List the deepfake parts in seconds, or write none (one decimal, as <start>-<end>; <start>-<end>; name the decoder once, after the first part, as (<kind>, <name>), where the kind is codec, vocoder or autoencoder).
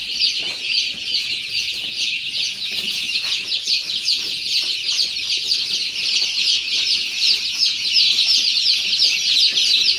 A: 0.5-4.6 (vocoder, Vocos); 6.5-7.9